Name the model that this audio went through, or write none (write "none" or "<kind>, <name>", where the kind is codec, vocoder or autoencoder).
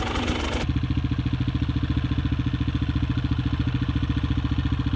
none